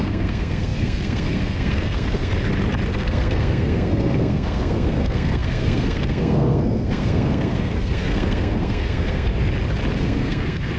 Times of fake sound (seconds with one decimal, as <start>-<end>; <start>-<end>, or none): 0.0-2.3; 2.9-9.3; 10.0-10.8